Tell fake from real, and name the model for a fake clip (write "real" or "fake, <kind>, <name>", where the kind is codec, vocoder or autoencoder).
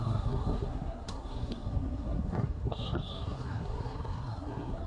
fake, codec, SNAC